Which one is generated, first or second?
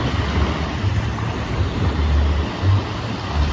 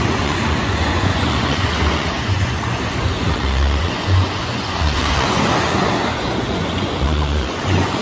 second